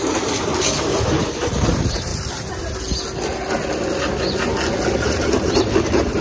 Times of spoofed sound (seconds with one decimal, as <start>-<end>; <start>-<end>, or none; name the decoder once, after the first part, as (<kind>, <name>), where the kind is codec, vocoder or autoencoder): 0.0-0.5 (vocoder, BigVGAN v2); 1.2-2.1; 5.8-6.2